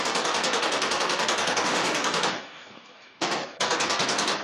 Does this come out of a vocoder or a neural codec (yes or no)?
yes